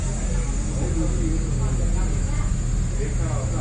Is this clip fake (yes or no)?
no